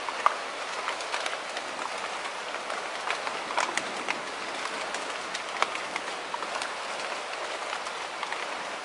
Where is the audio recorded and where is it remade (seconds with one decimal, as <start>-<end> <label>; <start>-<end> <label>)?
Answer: 0.0-8.8 recorded